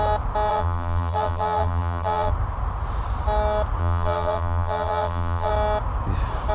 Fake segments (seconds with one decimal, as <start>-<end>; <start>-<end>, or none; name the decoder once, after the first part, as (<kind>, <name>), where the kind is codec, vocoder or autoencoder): 0.5-2.3 (vocoder, BigVGAN v2); 3.8-5.5